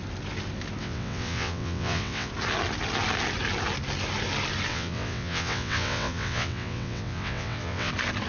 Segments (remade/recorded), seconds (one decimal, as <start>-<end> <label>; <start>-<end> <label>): 0.0-0.8 recorded; 0.8-2.3 remade; 2.3-4.7 recorded; 4.7-7.9 remade; 7.9-8.3 recorded